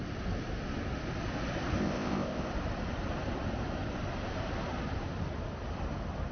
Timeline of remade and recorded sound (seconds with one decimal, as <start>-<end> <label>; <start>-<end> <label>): 0.0-1.8 recorded; 1.8-2.5 remade; 2.5-6.3 recorded